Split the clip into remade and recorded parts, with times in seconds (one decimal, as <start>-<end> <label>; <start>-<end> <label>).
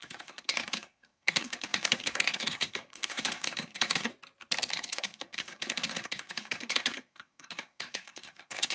0.0-4.1 remade; 4.1-4.7 recorded; 4.7-8.7 remade